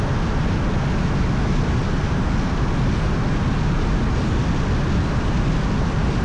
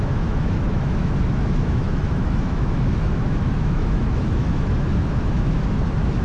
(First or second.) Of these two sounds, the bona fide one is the first